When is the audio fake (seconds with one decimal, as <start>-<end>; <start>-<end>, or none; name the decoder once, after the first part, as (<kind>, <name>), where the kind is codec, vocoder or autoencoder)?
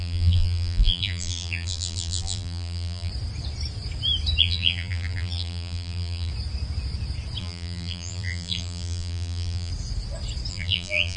0.0-3.1 (vocoder, BigVGAN v2); 4.4-6.3; 7.4-9.7; 10.5-11.2